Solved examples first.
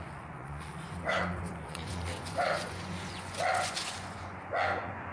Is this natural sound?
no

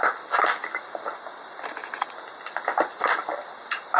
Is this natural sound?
yes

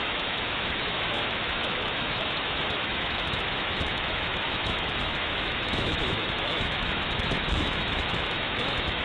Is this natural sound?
no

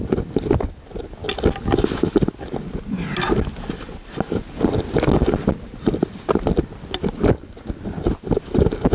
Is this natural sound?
yes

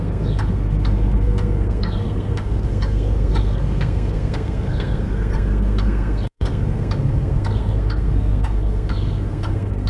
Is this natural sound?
no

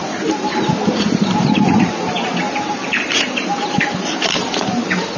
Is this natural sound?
no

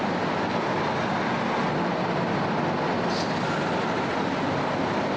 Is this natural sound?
yes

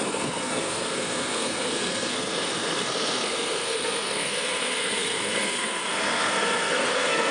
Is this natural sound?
no